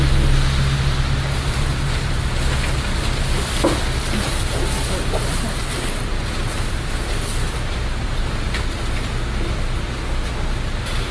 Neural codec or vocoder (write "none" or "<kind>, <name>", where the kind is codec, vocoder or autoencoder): none